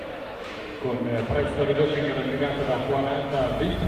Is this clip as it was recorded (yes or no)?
no